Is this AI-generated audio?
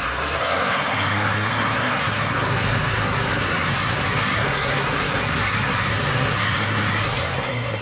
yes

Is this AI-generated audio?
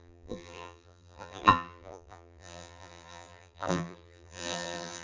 yes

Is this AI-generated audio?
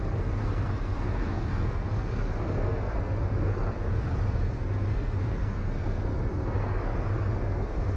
yes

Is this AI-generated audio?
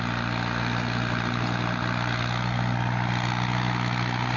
no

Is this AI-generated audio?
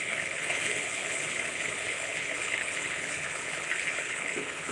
yes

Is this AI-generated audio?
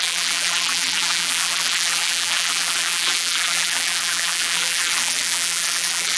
yes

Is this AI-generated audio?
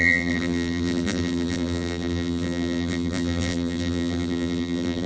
yes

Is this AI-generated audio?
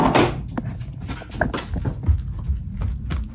no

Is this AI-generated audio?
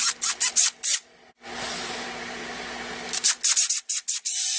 no